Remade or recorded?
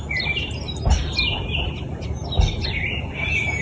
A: recorded